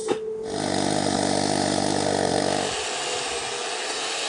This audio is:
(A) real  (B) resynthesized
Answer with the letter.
A